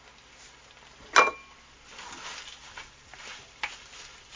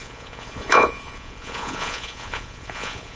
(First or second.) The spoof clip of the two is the second